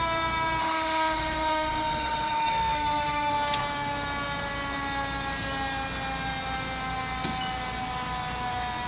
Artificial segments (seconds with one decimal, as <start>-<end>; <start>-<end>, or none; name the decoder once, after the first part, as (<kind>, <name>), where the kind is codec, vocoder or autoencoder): 0.6-3.3 (autoencoder, DAC-VAE)